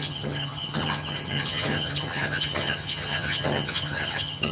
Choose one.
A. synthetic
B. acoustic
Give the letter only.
A